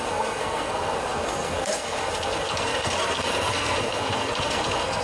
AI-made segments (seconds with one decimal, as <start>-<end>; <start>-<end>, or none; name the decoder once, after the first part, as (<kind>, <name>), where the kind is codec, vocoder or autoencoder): 0.0-5.0 (codec, SNAC)